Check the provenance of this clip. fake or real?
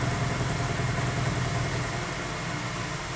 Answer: real